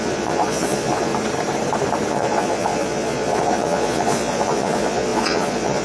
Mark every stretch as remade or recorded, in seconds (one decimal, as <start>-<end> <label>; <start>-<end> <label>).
0.0-1.1 remade; 1.1-2.1 recorded; 2.1-5.8 remade